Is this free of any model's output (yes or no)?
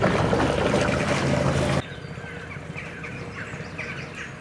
yes